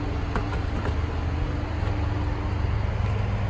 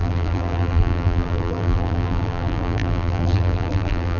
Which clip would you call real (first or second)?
first